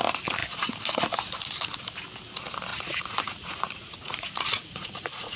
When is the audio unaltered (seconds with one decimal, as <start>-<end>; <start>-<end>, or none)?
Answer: 0.0-2.7